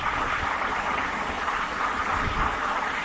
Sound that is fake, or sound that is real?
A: real